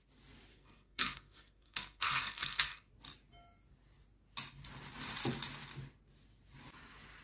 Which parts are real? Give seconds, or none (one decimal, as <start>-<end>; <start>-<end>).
0.0-0.5; 2.9-7.2